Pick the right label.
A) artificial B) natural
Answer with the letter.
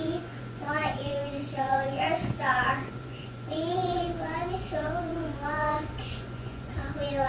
A